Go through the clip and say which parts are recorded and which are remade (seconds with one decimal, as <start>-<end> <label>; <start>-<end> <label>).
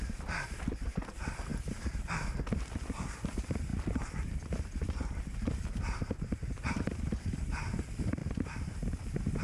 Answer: 0.0-9.4 remade